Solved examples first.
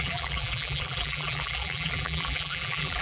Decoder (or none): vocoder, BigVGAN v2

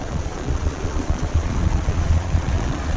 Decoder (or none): vocoder, Vocos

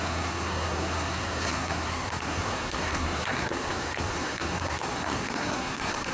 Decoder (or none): codec, SNAC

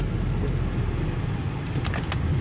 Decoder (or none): none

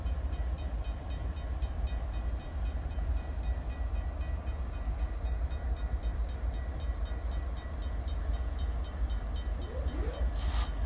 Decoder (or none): none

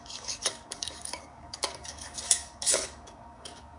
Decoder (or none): codec, DAC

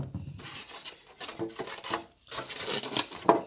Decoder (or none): none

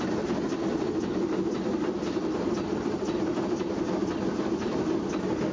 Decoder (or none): none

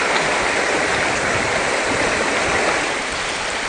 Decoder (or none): none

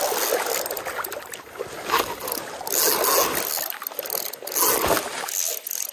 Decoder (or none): none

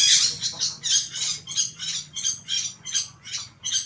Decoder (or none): vocoder, Vocos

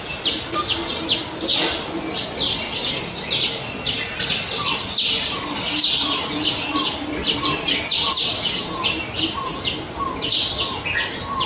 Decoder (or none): none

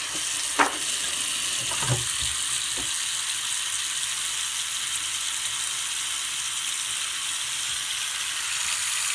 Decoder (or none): none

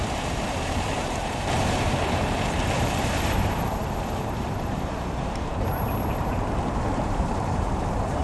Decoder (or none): vocoder, BigVGAN v2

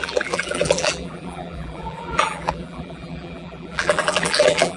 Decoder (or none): vocoder, BigVGAN v2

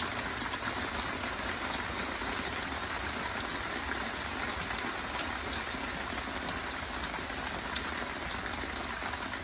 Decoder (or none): none